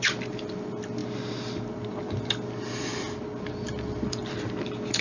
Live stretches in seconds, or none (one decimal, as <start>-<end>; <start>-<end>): 0.0-5.0